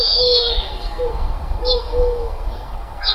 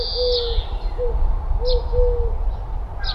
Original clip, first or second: second